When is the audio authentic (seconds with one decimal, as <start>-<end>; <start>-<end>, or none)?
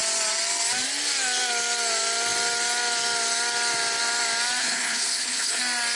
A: 0.0-4.6; 5.6-6.0